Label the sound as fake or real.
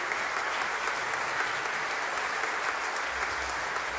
real